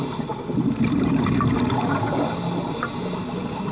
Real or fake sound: real